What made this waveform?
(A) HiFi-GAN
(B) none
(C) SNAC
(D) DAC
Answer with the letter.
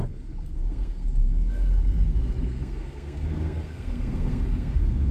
C